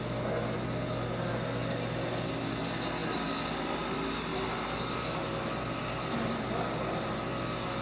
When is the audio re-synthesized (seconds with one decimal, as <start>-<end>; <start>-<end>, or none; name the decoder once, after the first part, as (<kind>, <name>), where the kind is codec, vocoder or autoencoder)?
none

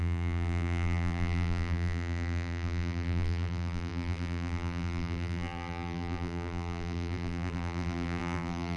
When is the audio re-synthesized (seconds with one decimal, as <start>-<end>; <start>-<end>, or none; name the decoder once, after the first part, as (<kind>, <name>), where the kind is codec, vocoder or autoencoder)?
0.0-8.8 (vocoder, BigVGAN v2)

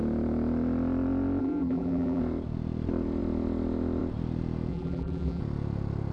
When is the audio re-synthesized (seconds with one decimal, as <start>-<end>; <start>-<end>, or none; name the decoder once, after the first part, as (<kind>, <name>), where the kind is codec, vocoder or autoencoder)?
1.4-2.2 (vocoder, BigVGAN v2); 4.7-5.4

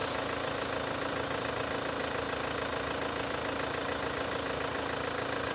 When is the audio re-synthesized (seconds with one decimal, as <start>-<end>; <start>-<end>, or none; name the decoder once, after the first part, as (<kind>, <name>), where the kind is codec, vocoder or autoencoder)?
none

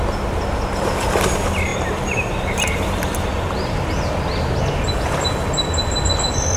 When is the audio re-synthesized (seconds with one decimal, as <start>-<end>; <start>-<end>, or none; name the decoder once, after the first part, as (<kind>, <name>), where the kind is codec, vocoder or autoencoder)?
1.7-4.1 (vocoder, BigVGAN v2)